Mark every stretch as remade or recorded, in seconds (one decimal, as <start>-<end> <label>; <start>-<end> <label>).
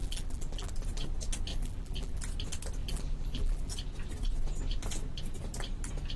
0.0-0.7 remade; 0.7-1.5 recorded; 1.5-2.2 remade; 2.2-2.8 recorded; 2.8-3.7 remade; 3.7-6.2 recorded